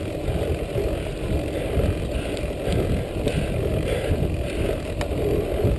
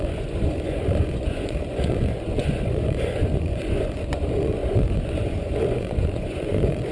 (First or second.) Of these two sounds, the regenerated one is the second